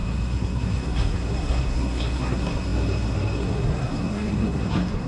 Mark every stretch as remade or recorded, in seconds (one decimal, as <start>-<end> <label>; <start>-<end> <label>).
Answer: 0.0-5.1 remade